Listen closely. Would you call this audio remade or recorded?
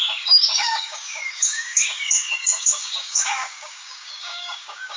remade